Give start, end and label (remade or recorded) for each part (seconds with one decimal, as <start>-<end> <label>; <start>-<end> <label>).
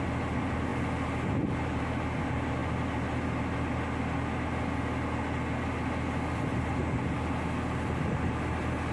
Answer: 0.0-8.9 recorded